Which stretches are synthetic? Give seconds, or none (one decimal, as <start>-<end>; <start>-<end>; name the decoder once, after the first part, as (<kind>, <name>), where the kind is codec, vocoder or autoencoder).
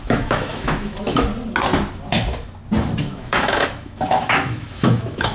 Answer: 0.0-1.3 (autoencoder, DAC-VAE); 3.0-5.3